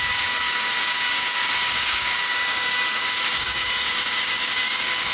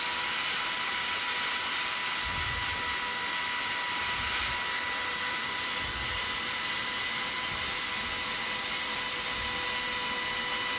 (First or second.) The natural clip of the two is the second